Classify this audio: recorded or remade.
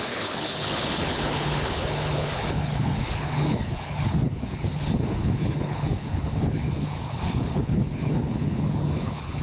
remade